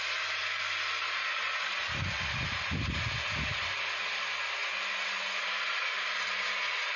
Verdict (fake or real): real